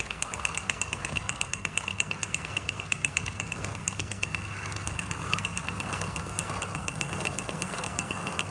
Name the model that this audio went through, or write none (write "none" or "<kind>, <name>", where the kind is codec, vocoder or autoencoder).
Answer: codec, SNAC